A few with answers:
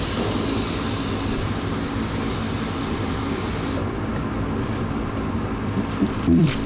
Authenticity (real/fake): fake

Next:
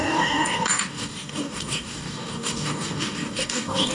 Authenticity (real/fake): fake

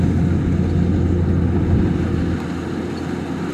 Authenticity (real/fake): real